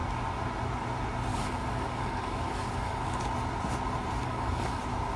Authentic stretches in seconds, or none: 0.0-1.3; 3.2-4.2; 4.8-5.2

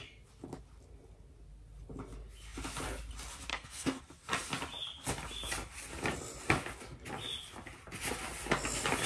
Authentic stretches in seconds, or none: 0.0-3.5; 4.0-9.1

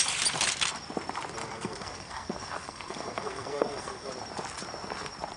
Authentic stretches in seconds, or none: 0.0-1.4; 4.1-5.4

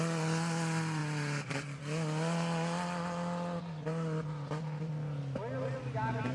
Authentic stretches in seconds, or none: 0.0-6.3

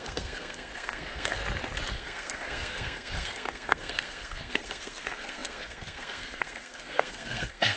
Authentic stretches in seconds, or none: 1.4-1.9

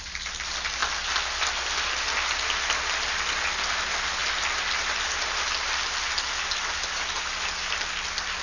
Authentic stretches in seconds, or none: 0.0-8.4

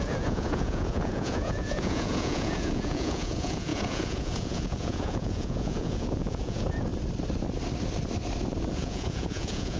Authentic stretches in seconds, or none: 6.9-8.7

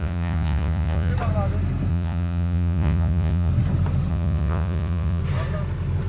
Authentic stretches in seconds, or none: 1.1-1.9; 3.5-4.1; 5.2-6.1